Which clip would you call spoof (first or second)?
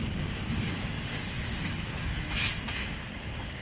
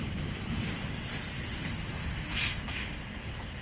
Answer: first